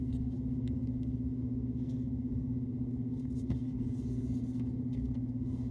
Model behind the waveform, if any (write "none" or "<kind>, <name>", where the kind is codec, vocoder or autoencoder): codec, SNAC